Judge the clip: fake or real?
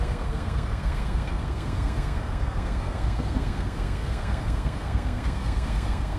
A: fake